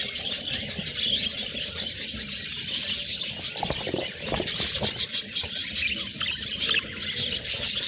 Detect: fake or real real